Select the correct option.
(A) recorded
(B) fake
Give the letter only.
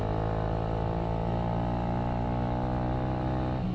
A